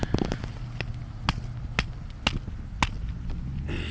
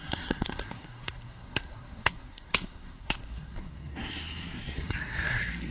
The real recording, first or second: first